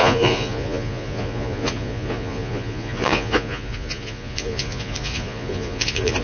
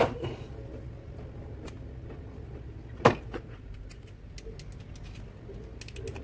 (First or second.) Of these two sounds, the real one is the second